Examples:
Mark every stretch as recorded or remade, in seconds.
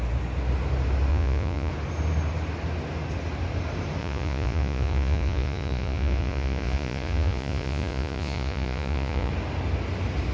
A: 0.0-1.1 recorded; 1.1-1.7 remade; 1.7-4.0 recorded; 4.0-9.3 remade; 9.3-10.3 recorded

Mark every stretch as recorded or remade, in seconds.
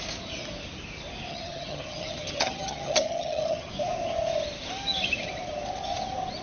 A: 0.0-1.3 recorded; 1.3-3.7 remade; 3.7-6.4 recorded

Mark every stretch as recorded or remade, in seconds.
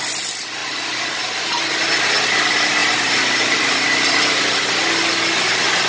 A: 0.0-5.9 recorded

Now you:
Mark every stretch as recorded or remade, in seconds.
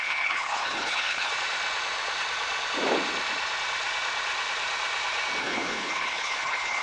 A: 0.0-1.3 remade; 1.3-5.4 recorded; 5.4-6.8 remade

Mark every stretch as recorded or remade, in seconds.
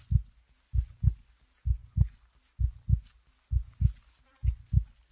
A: 0.0-5.1 recorded